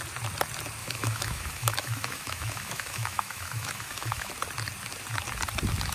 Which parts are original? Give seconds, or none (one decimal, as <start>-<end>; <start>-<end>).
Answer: 0.0-0.8; 4.3-5.9